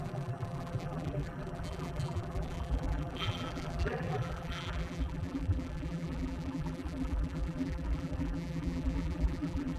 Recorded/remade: remade